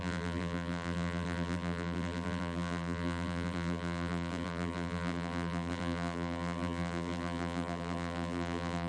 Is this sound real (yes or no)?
no